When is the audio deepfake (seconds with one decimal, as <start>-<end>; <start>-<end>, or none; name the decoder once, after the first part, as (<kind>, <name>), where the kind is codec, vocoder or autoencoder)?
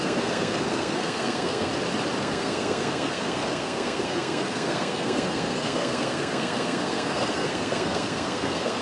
0.0-1.7 (codec, SNAC); 2.2-8.8